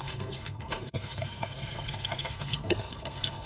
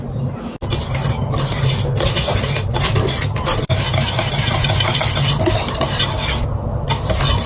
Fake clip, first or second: first